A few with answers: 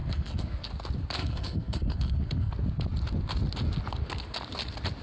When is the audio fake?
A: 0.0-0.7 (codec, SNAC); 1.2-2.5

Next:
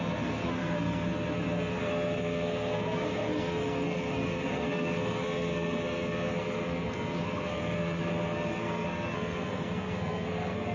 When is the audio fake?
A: 0.0-1.1 (codec, SNAC); 1.8-10.7

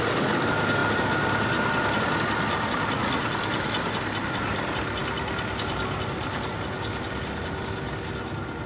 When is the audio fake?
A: none

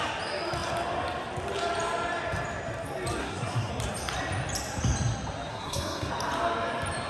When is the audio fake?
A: 3.2-3.7 (codec, SNAC); 5.5-6.1